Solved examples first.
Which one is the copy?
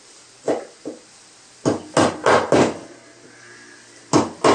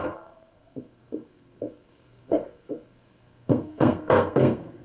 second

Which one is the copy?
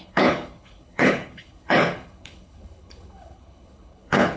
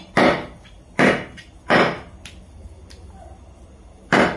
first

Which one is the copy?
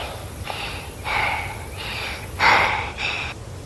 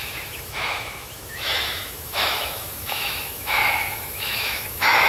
second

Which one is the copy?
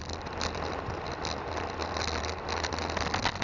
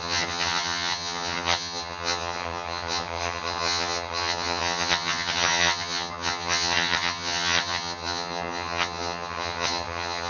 second